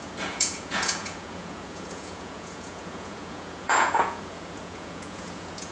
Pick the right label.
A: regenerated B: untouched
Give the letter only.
A